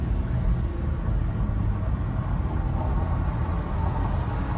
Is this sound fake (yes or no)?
no